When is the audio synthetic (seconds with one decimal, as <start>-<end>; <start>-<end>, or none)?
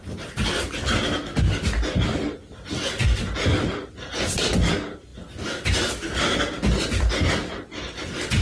none